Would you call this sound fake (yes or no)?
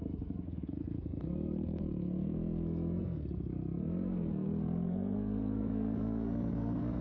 yes